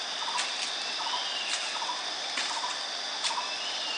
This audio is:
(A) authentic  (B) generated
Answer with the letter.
A